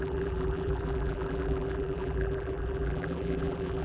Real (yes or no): no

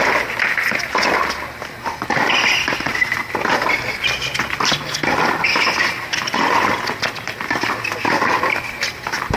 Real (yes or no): yes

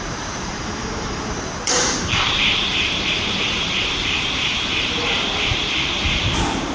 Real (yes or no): no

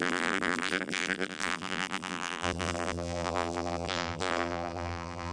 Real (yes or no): no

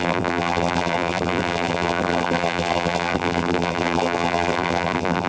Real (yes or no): no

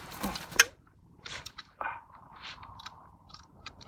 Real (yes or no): no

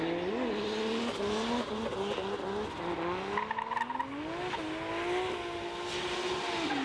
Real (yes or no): yes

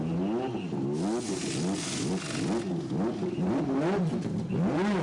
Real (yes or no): yes